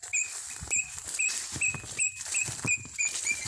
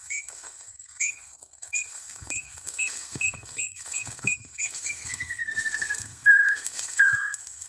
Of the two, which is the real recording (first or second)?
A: first